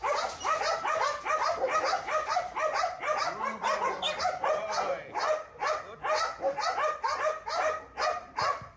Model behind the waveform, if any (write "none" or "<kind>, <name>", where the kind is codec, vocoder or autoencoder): none